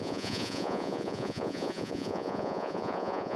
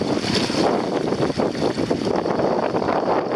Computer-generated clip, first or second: first